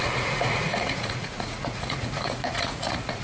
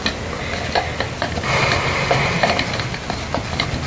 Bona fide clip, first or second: second